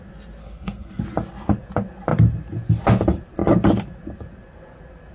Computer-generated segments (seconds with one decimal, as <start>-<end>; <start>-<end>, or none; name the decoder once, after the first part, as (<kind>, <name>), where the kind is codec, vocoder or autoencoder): 0.4-1.0 (codec, SNAC)